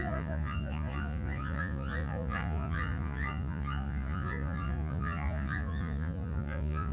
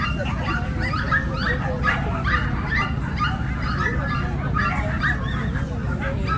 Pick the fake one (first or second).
first